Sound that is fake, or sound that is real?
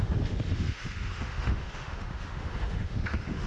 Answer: fake